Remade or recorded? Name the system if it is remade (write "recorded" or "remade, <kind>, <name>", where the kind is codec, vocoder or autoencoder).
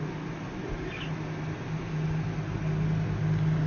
recorded